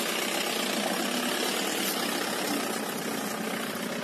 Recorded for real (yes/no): yes